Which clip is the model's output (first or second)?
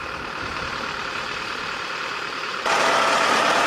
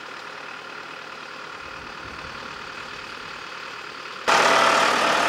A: first